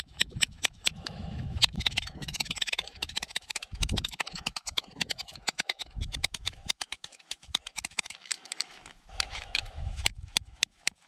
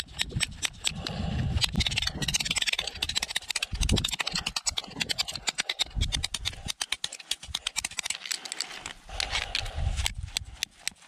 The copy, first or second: first